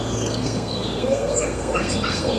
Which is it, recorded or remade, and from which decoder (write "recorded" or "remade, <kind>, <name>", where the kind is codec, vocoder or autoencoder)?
remade, codec, SNAC